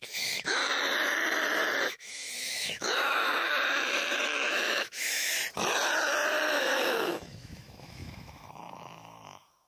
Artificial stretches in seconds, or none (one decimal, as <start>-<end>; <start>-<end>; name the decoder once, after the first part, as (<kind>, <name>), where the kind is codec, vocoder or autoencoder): 0.0-0.6 (autoencoder, DAC-VAE); 1.9-3.3; 4.2-5.3; 6.5-9.7